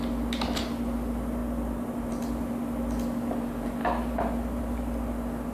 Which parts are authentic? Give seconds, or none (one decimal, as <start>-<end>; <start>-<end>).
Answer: 0.0-5.5